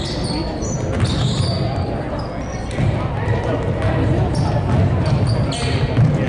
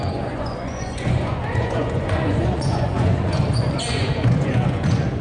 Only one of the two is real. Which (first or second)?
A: first